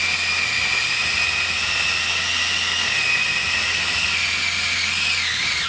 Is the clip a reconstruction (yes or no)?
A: no